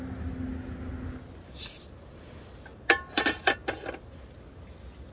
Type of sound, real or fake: real